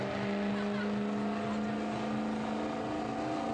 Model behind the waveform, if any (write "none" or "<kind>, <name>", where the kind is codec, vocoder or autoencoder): none